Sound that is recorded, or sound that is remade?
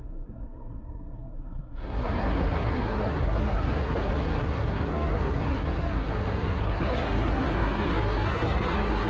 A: remade